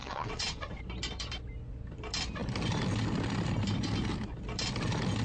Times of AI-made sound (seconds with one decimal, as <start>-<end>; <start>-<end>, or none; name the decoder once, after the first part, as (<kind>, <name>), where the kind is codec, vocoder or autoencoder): 0.0-0.8 (vocoder, WaveNeXt)